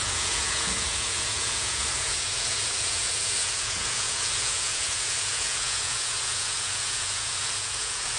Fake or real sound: fake